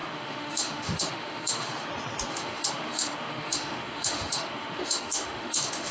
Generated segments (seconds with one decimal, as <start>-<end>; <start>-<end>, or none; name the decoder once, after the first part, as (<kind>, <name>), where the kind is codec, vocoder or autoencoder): 0.0-1.9 (autoencoder, DAC-VAE); 2.3-5.9